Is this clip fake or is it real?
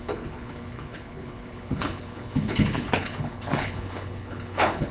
fake